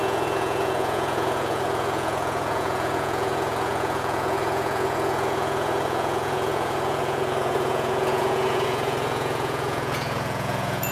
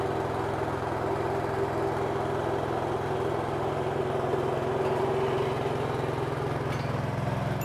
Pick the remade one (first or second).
first